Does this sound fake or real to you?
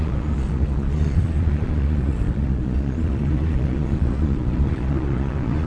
fake